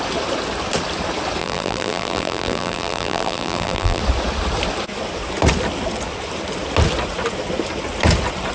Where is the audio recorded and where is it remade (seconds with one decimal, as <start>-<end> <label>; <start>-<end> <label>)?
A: 0.0-1.4 recorded; 1.4-4.0 remade; 4.0-8.5 recorded